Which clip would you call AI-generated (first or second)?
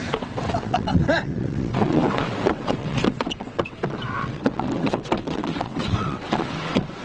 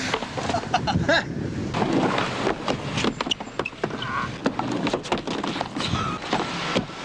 first